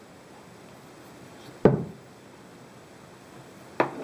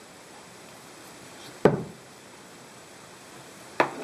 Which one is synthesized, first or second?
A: second